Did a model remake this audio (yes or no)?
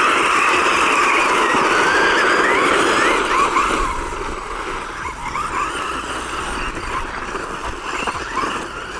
no